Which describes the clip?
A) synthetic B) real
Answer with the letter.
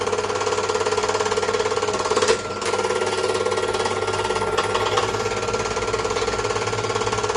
B